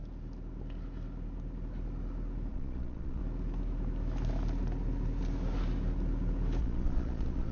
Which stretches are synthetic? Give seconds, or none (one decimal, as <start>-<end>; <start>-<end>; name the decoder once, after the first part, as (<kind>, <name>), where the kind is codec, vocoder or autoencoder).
2.5-3.2 (vocoder, Vocos); 6.6-7.5